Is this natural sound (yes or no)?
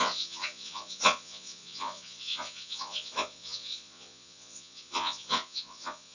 no